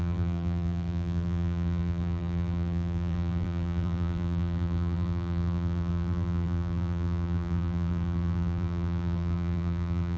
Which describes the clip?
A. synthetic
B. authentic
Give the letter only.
A